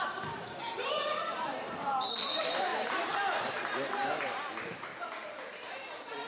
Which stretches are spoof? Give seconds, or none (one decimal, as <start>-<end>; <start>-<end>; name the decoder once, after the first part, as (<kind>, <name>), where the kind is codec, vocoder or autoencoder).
0.0-2.7 (vocoder, BigVGAN v2); 3.4-4.9; 5.5-6.3